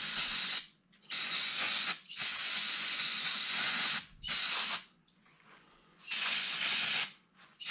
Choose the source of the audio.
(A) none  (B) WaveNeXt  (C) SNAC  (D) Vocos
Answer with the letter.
D